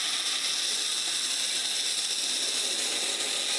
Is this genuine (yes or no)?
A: yes